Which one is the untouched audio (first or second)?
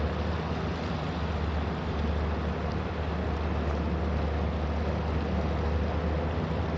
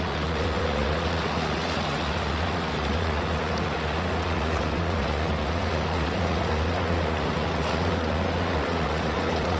first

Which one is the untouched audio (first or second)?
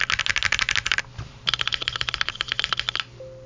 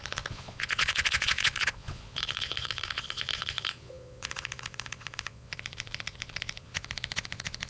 first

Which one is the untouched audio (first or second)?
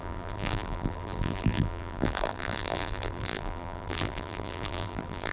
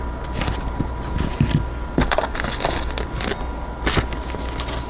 second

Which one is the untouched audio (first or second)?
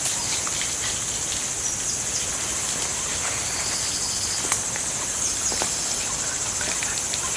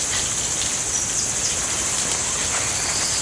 second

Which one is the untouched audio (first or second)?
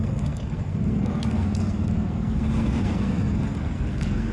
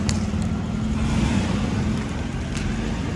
second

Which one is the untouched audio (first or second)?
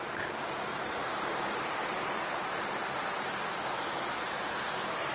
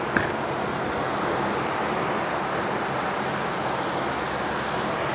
second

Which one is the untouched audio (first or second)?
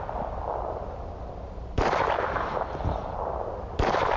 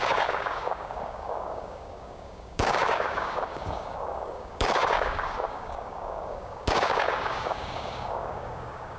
first